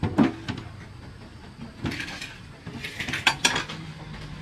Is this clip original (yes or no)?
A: yes